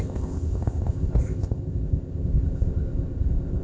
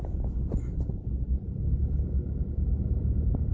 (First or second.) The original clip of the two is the second